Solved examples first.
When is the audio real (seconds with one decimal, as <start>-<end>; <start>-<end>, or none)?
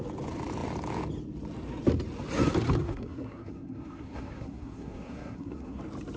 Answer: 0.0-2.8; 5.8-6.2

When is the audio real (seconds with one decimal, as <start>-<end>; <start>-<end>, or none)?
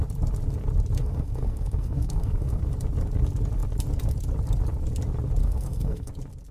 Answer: 0.0-1.0; 2.6-5.4; 6.1-6.5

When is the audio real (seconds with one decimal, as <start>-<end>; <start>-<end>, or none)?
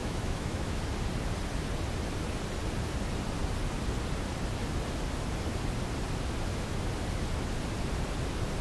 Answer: 0.8-8.6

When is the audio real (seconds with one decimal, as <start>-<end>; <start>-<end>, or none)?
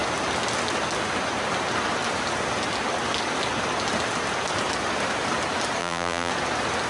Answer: 0.0-5.8; 6.3-6.9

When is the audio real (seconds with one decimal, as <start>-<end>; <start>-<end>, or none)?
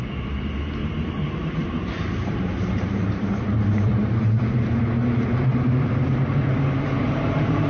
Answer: 0.0-0.8; 4.8-5.5; 7.0-7.7